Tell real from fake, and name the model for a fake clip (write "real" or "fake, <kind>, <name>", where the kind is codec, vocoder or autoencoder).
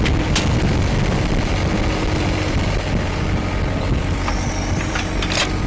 real